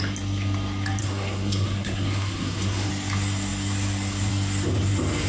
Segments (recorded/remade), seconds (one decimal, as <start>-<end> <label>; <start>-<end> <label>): 0.0-1.0 recorded; 1.0-2.9 remade; 2.9-5.3 recorded